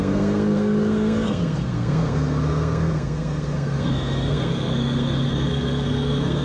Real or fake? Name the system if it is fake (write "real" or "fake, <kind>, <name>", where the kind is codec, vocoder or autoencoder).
fake, codec, SNAC